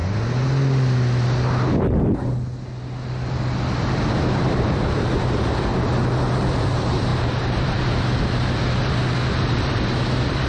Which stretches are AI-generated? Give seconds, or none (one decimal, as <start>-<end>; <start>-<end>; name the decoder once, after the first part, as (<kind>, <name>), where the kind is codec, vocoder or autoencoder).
4.3-5.7 (vocoder, BigVGAN v2); 6.4-8.6; 9.3-10.5